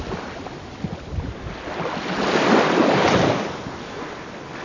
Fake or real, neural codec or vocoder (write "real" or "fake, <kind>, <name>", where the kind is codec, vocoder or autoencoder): real